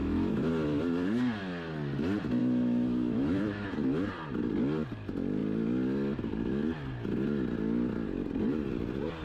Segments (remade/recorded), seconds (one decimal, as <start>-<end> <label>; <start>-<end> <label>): 0.0-0.5 remade; 0.5-2.4 recorded; 2.4-3.7 remade; 3.7-9.2 recorded

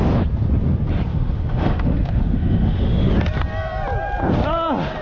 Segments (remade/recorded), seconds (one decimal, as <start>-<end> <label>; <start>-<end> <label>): 0.0-1.1 recorded; 1.1-3.1 remade; 3.1-5.0 recorded

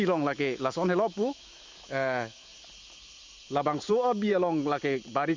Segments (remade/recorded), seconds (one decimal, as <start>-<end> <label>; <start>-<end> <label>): 0.0-2.5 remade; 2.5-3.9 recorded; 3.9-4.3 remade; 4.3-5.4 recorded